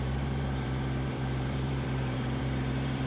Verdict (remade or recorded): remade